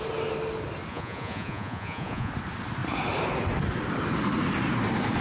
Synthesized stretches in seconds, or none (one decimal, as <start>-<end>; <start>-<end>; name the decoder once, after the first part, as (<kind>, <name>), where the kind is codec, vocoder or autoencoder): 0.9-2.3 (vocoder, Vocos)